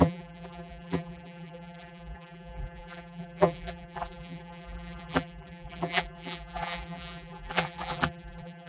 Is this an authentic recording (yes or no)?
no